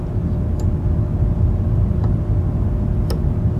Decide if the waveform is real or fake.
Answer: real